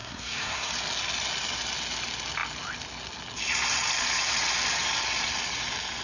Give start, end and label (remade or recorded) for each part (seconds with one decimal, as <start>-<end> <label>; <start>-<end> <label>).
0.0-0.7 remade; 0.7-6.0 recorded

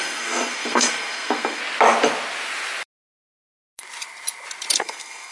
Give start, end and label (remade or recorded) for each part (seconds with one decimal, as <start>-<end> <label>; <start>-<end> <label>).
0.0-1.6 remade; 1.6-4.8 recorded; 4.8-5.3 remade